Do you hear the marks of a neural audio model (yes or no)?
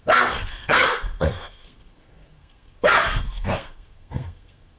yes